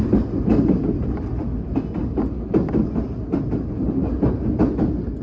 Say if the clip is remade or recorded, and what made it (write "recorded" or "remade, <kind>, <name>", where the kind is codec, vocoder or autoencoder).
recorded